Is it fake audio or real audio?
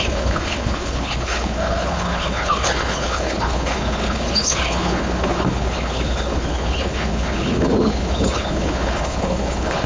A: fake